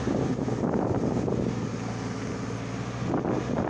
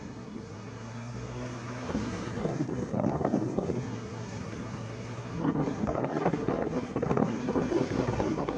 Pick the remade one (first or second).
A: second